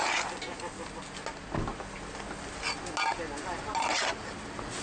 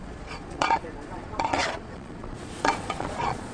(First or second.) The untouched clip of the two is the first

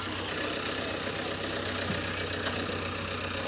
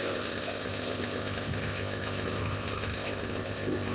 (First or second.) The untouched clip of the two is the first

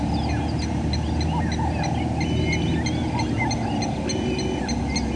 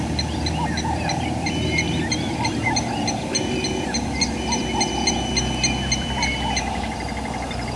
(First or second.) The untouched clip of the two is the first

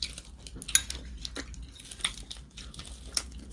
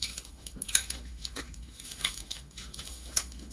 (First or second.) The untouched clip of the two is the first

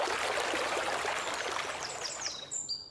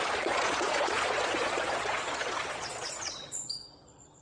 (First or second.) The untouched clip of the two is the first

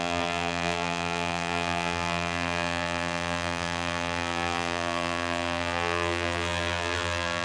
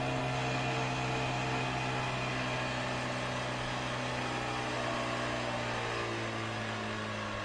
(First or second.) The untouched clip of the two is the second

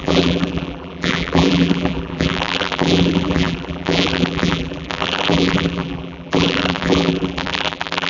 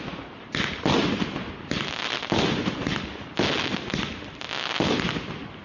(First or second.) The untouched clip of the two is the second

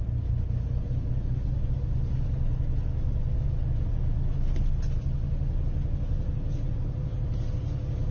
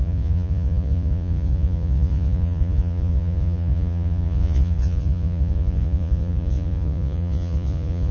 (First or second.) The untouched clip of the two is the first